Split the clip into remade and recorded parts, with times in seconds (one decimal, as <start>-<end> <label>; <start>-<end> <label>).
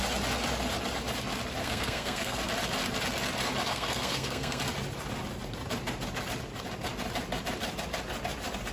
0.0-1.6 recorded; 1.6-2.4 remade; 2.4-3.7 recorded; 3.7-4.6 remade; 4.6-8.7 recorded